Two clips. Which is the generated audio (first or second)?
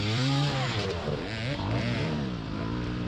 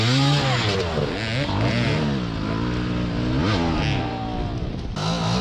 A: first